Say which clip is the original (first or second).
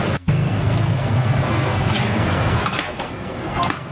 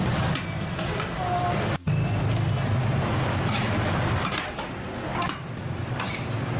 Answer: second